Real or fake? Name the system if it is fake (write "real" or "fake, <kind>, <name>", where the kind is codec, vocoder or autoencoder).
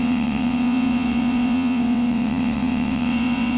fake, vocoder, WaveNeXt